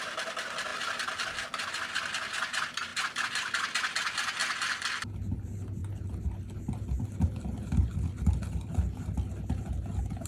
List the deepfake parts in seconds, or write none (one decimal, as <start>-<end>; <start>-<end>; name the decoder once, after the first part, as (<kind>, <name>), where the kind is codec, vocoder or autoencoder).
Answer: none